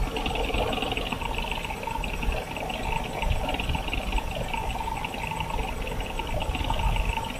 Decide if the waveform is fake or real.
real